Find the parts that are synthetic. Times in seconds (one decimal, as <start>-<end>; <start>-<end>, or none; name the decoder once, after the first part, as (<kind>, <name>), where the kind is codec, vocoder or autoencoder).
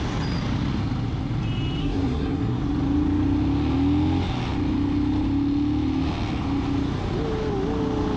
1.8-2.6 (codec, SNAC)